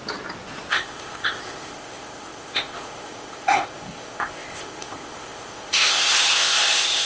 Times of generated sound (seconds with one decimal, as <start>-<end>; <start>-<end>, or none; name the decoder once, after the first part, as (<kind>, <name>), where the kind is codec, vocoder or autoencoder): 0.7-7.1 (codec, ZipCodec)